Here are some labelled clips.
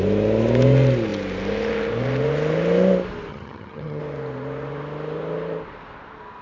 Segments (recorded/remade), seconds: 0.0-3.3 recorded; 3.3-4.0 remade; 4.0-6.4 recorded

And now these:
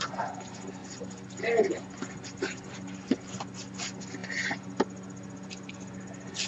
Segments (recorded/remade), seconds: 0.0-6.5 recorded

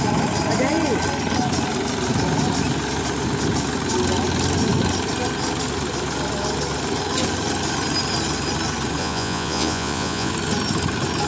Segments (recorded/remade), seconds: 0.0-9.0 recorded; 9.0-10.3 remade; 10.3-11.3 recorded